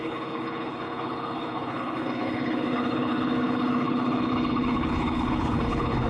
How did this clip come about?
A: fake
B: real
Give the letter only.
A